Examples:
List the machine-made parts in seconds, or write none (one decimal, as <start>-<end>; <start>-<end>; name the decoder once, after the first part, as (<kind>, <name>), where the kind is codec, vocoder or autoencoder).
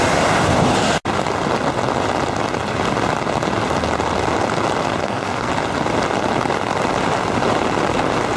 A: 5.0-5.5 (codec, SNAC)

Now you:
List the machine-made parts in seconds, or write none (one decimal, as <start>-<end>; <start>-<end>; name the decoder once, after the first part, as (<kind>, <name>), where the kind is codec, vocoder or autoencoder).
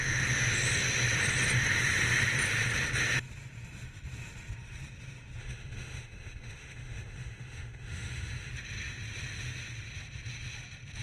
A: 5.4-8.5 (autoencoder, DAC-VAE)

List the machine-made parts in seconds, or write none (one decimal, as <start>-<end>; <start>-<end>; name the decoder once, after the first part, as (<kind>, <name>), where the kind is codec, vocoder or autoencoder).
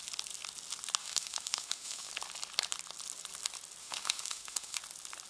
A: 1.0-2.1 (autoencoder, DAC-VAE); 3.8-4.8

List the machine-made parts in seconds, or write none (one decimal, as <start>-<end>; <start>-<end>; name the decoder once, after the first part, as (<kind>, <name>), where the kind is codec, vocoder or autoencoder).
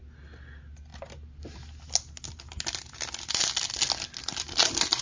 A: none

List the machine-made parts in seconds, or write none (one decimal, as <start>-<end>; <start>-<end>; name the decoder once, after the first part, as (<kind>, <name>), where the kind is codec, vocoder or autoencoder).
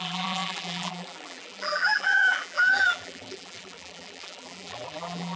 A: 0.0-5.4 (vocoder, BigVGAN v2)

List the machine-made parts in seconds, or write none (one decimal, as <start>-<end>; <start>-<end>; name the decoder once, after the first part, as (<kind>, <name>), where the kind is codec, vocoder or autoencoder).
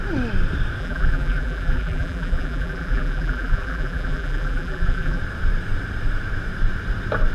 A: 0.8-5.2 (vocoder, BigVGAN v2)